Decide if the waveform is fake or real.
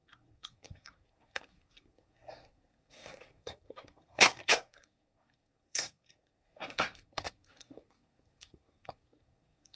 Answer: fake